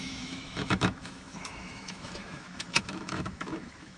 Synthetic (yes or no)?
yes